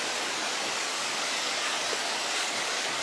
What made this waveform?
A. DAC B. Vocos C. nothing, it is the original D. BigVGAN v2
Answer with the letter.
A